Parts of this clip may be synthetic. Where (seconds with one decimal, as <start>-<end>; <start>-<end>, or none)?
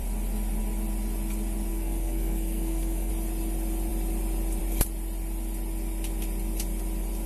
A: 1.7-3.1